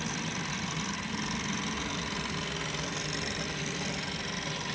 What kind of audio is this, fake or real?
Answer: real